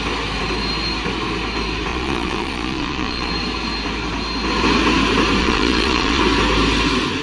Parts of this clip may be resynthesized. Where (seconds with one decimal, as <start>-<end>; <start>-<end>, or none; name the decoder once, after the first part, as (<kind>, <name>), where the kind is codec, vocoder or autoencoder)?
1.9-3.3 (vocoder, Vocos); 5.4-6.2